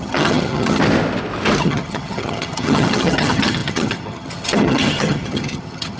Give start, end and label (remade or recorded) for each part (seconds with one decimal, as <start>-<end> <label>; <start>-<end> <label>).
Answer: 0.0-0.8 remade; 0.8-1.6 recorded; 1.6-6.0 remade